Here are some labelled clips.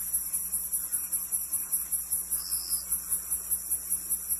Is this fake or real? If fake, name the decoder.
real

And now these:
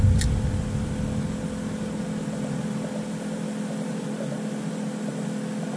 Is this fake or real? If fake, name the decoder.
real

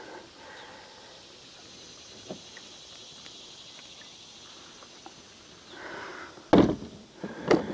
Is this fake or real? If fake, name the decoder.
real